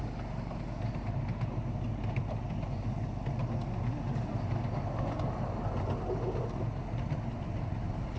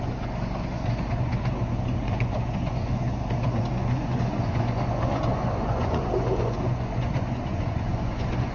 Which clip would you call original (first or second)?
first